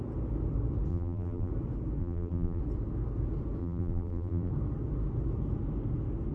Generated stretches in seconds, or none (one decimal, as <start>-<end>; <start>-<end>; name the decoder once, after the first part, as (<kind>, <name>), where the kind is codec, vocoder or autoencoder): 0.9-1.5 (vocoder, BigVGAN v2); 2.0-2.6; 3.6-4.5